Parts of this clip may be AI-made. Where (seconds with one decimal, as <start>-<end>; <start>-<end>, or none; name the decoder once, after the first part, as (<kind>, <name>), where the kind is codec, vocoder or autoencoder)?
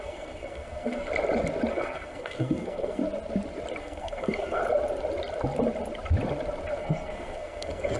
0.0-1.1 (codec, SNAC); 1.7-3.0; 3.8-4.6; 6.8-8.0